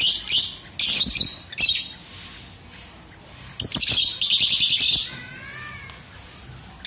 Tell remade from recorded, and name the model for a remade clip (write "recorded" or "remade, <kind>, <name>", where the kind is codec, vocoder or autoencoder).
recorded